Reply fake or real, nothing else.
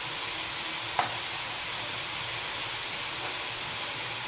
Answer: real